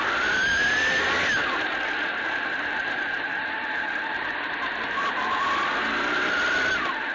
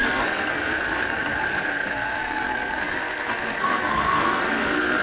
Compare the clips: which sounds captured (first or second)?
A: first